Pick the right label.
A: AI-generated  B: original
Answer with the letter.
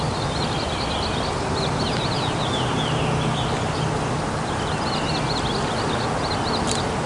B